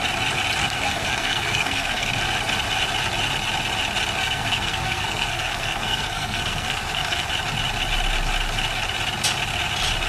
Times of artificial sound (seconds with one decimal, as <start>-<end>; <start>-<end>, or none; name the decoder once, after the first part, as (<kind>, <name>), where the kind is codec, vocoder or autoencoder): 0.6-2.1 (codec, SNAC); 4.2-7.3